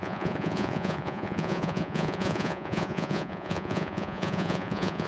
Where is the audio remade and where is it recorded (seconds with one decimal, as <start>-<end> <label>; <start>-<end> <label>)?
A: 0.0-5.1 remade